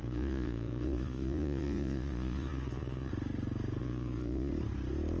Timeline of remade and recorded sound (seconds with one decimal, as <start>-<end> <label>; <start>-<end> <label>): 0.0-3.1 remade; 3.1-3.8 recorded; 3.8-4.5 remade; 4.5-5.2 recorded